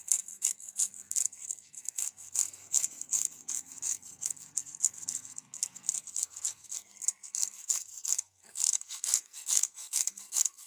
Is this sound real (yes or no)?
no